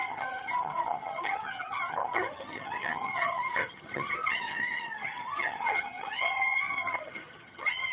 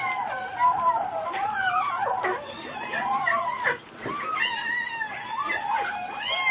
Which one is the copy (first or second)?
first